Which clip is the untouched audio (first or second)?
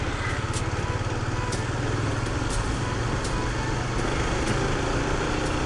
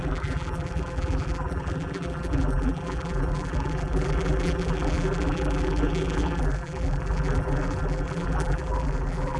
first